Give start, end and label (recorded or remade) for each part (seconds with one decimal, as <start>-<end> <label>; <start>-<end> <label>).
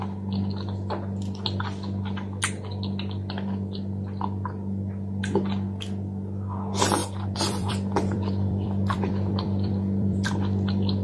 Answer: 0.0-7.0 recorded; 7.0-10.3 remade; 10.3-11.0 recorded